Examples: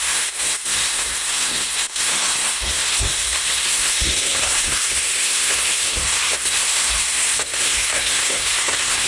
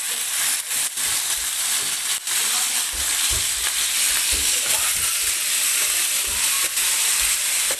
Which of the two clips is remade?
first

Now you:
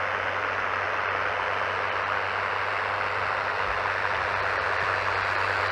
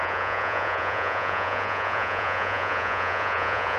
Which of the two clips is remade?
second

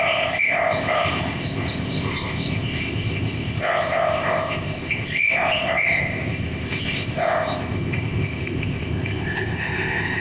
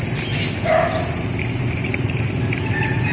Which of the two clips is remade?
first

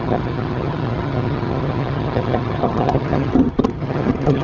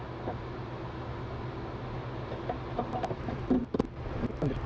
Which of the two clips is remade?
first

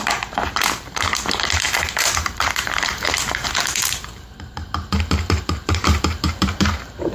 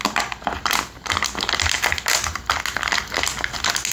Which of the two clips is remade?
first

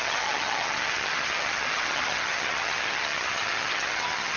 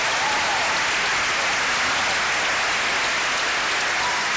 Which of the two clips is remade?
first